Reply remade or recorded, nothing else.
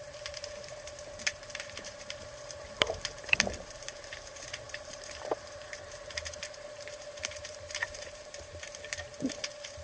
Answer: remade